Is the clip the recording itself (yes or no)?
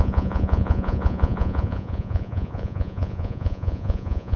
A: no